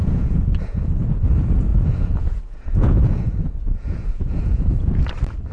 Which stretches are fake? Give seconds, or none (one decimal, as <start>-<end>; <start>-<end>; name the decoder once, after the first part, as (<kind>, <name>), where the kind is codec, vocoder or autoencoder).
0.0-0.8 (vocoder, Vocos); 1.7-5.0